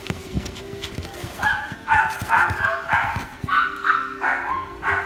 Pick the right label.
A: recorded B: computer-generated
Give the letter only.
B